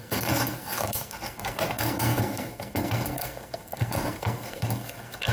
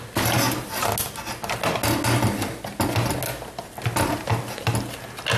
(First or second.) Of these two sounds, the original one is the second